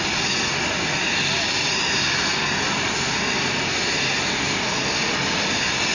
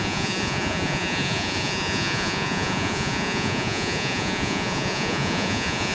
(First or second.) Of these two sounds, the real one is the first